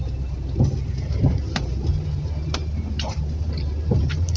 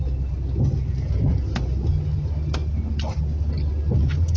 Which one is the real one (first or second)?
second